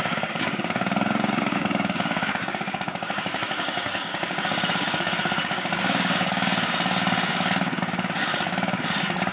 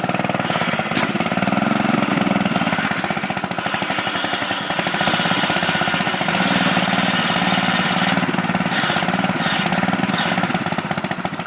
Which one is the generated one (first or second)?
first